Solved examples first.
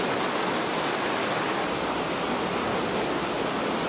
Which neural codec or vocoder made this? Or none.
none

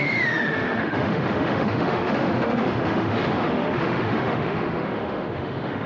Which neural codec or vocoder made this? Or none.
autoencoder, DAC-VAE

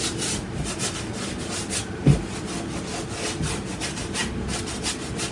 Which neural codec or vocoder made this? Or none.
none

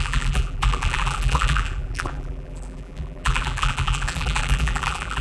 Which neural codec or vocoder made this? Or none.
vocoder, BigVGAN v2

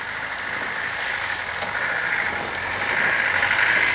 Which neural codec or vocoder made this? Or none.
none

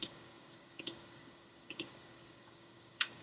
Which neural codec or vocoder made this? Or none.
codec, DAC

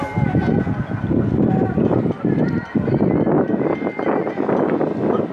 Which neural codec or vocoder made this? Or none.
none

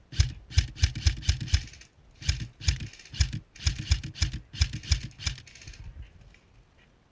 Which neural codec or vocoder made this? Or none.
none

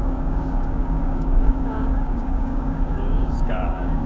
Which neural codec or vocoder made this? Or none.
codec, DAC